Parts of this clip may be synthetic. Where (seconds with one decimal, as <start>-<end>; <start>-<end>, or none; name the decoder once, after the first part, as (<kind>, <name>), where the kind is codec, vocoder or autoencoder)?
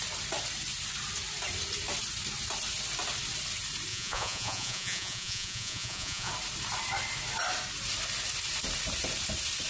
3.9-6.3 (vocoder, Vocos)